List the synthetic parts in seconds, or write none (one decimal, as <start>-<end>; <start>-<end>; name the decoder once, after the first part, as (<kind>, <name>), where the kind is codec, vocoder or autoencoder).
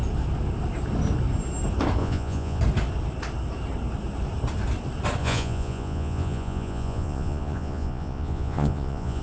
2.0-2.6 (vocoder, Vocos); 5.2-9.2